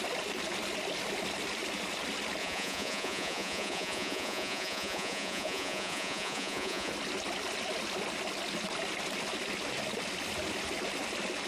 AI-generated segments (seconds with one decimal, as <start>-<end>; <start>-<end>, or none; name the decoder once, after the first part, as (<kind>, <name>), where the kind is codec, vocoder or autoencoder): 2.4-6.9 (vocoder, Vocos)